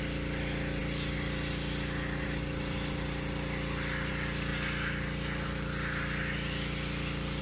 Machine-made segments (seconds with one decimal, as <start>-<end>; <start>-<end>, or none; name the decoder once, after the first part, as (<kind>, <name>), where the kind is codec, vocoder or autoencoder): none